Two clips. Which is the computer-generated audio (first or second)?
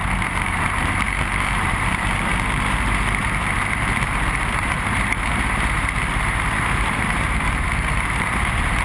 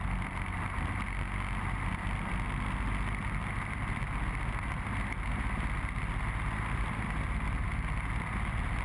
first